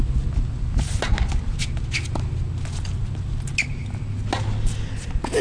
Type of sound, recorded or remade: recorded